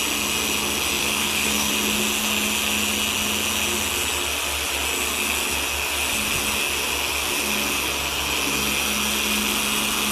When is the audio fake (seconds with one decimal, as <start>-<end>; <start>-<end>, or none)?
1.0-1.7